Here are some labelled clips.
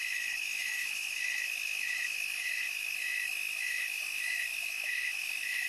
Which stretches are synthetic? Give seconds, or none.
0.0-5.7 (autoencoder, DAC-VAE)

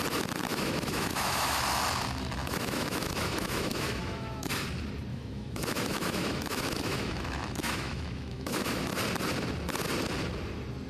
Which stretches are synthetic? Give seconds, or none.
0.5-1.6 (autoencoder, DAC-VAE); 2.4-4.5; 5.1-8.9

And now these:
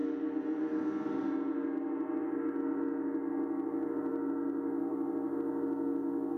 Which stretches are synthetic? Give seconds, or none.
none